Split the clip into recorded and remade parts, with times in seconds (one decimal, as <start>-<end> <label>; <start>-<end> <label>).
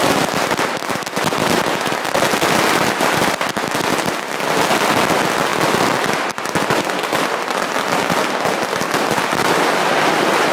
0.0-10.5 recorded